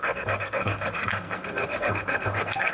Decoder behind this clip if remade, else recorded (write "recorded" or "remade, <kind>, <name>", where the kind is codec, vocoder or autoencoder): remade, codec, SNAC